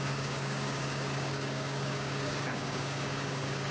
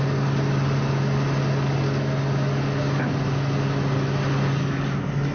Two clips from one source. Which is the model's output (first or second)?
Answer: first